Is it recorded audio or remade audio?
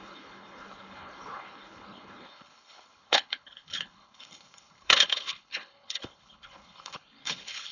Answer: remade